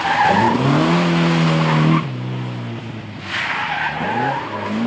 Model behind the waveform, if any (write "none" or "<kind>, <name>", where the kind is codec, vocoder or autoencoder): none